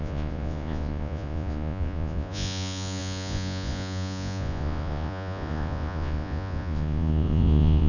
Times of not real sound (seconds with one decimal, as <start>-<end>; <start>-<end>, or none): 0.0-7.9